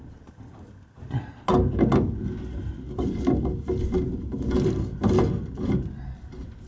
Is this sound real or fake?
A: real